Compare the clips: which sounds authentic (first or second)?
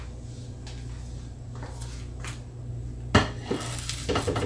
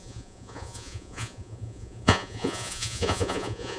first